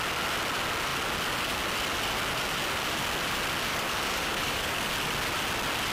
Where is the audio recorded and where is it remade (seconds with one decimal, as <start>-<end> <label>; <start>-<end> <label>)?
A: 0.0-3.7 recorded; 3.7-4.9 remade; 4.9-5.9 recorded